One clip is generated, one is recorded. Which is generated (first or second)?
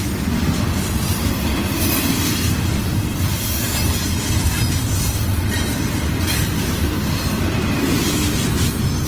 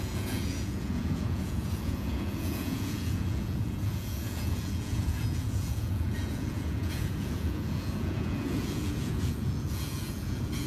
second